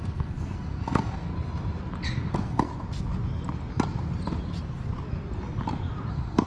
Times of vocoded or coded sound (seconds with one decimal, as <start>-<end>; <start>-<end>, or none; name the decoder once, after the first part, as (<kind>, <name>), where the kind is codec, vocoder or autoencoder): 0.0-1.3 (codec, SNAC); 2.3-2.7; 6.1-6.5